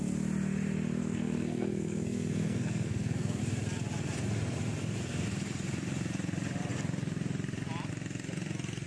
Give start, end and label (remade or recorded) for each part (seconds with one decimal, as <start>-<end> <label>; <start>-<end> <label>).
0.0-1.0 recorded; 1.0-3.4 remade; 3.4-8.9 recorded